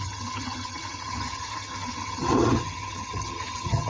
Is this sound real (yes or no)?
no